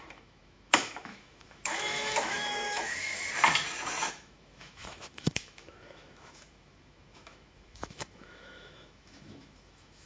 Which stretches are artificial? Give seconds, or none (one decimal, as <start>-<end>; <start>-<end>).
0.0-3.1; 4.1-10.1